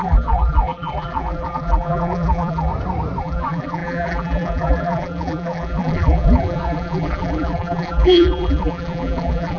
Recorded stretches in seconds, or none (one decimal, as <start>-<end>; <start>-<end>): 2.7-3.2